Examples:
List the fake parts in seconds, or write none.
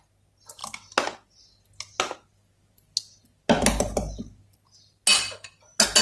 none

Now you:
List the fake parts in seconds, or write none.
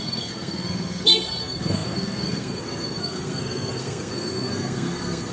0.0-5.3 (codec, SNAC)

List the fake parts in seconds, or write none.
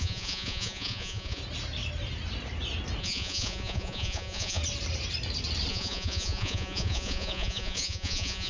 0.0-1.4 (vocoder, Vocos); 3.0-4.6; 5.7-8.5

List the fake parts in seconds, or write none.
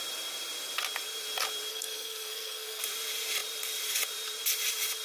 1.7-2.8 (codec, SNAC)